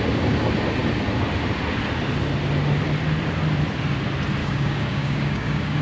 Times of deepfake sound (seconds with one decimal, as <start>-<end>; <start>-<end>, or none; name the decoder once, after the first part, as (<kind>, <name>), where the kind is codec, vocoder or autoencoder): 4.4-5.8 (codec, DAC)